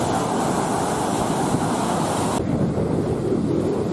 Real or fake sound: real